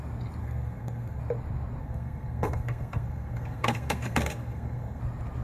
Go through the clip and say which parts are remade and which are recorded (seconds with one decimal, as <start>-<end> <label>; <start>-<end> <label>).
0.0-0.4 recorded; 0.4-1.2 remade; 1.2-1.8 recorded; 1.8-5.0 remade; 5.0-5.4 recorded